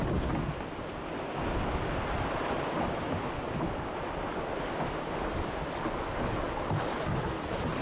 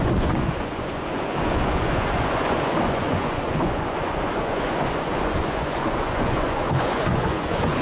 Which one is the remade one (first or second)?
second